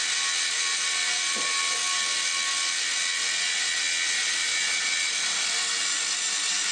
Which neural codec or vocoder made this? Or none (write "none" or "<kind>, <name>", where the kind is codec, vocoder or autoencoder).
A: none